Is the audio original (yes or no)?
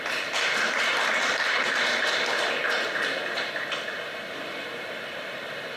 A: yes